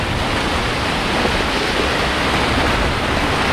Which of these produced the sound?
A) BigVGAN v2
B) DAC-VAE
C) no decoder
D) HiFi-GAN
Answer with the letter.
C